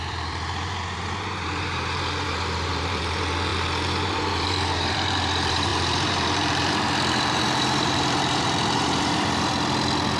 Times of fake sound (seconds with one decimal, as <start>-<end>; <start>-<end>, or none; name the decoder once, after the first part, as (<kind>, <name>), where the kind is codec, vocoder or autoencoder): 0.0-9.5 (vocoder, BigVGAN v2)